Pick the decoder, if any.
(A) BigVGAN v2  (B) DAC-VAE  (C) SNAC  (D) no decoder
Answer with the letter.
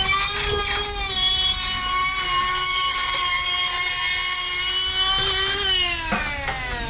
D